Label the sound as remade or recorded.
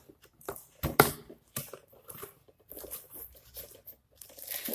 recorded